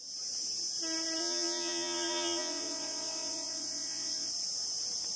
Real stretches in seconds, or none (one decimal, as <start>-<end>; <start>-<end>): 0.0-1.2; 4.3-5.2